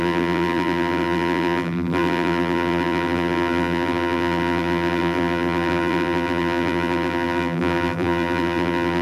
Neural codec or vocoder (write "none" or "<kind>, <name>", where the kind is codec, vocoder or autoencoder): vocoder, BigVGAN v2